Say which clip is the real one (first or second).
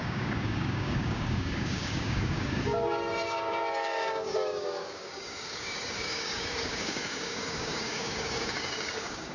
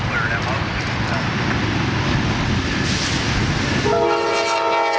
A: second